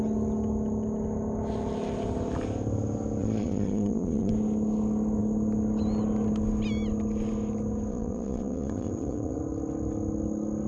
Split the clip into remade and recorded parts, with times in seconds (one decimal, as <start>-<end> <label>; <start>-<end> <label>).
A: 0.0-3.2 recorded; 3.2-4.3 remade; 4.3-7.9 recorded; 7.9-9.4 remade; 9.4-10.7 recorded